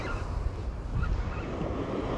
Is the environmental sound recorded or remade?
recorded